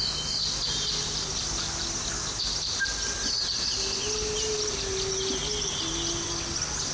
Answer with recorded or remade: recorded